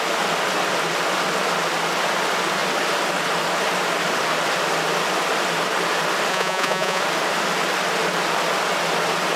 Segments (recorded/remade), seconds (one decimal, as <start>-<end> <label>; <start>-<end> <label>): 0.0-6.3 recorded; 6.3-7.0 remade; 7.0-9.4 recorded